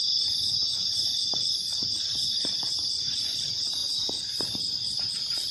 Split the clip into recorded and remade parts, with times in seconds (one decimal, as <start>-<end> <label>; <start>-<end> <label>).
0.0-5.5 remade